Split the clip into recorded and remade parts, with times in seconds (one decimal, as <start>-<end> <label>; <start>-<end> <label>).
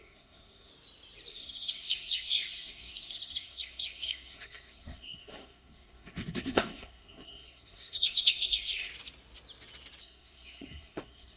0.0-0.7 remade; 0.7-1.3 recorded; 1.3-8.9 remade; 8.9-10.0 recorded; 10.0-11.4 remade